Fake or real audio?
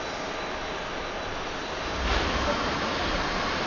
real